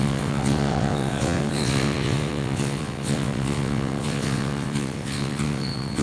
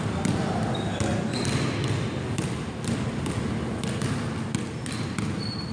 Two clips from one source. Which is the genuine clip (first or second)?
second